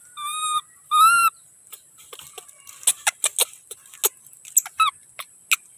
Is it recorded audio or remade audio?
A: recorded